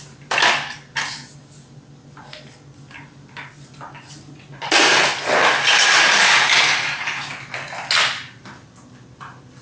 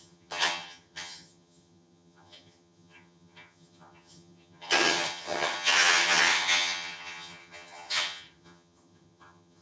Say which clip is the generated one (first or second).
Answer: second